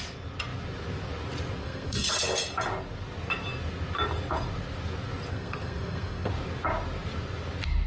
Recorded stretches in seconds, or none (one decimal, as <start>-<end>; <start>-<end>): 0.0-1.6; 2.1-5.3; 6.3-7.9